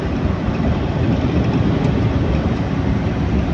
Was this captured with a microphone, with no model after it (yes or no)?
yes